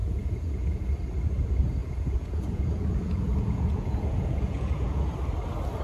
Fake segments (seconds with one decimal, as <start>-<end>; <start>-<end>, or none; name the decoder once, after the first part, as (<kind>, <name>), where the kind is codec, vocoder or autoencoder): 0.0-0.9 (vocoder, Vocos); 1.8-5.0